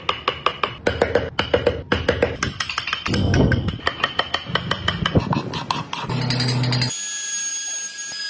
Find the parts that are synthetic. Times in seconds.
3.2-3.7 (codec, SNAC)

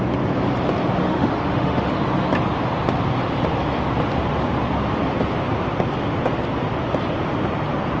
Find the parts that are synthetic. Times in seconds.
1.0-1.9 (autoencoder, DAC-VAE)